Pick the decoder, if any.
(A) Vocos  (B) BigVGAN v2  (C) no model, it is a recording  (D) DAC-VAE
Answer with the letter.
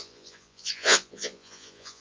A